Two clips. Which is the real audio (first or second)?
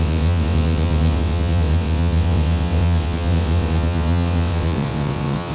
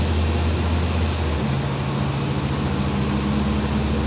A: second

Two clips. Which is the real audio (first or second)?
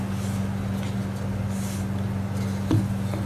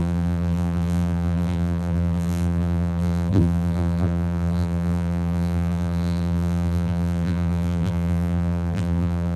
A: first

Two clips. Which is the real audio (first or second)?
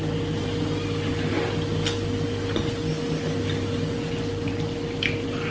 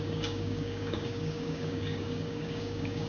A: first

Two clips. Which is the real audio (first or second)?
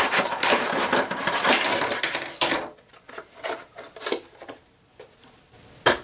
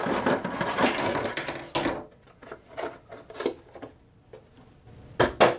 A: second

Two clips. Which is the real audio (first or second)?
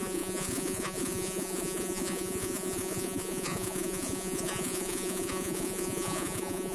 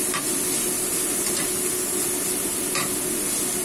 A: second